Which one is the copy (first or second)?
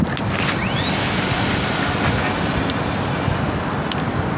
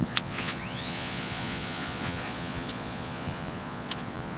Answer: second